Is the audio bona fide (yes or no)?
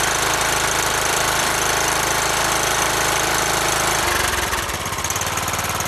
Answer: no